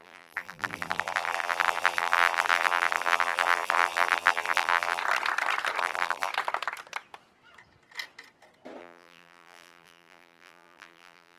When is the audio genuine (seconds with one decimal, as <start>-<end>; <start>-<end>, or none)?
5.0-5.8; 6.3-8.8